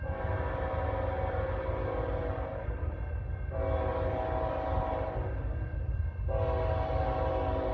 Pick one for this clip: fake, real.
real